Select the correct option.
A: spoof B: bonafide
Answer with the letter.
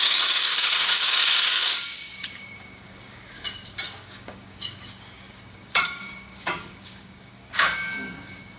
A